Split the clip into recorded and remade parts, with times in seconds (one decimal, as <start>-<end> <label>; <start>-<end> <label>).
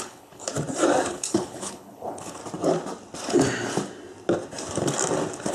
0.0-0.5 remade; 0.5-1.1 recorded; 1.1-2.4 remade; 2.4-5.5 recorded